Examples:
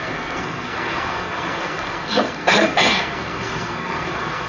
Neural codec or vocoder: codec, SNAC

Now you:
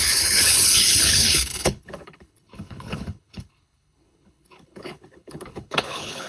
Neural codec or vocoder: codec, HILCodec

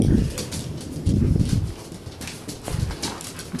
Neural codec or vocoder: none